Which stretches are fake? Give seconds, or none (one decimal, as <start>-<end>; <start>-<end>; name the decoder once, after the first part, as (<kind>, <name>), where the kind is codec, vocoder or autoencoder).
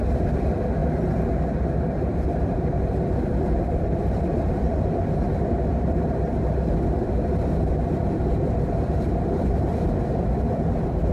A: 0.0-0.8 (vocoder, BigVGAN v2); 1.4-11.1